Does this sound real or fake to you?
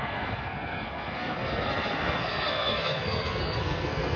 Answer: fake